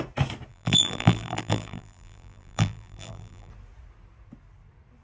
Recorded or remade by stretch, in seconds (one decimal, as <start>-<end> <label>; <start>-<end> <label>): 0.0-0.5 recorded; 0.5-3.5 remade; 3.5-5.0 recorded